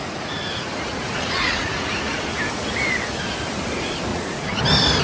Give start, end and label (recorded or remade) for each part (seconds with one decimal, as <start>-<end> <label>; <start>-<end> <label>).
0.0-0.4 recorded; 0.4-2.4 remade; 2.4-4.1 recorded; 4.1-4.6 remade; 4.6-5.0 recorded